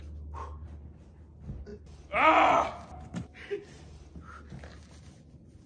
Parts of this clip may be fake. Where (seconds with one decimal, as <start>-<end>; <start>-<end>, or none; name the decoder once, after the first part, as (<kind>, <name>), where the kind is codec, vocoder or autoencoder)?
none